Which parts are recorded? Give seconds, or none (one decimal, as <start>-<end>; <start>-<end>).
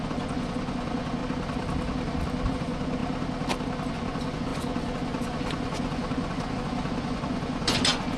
1.2-2.5; 3.0-3.9